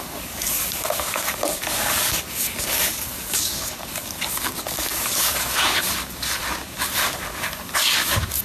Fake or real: fake